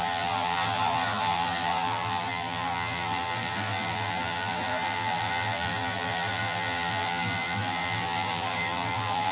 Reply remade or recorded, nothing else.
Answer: remade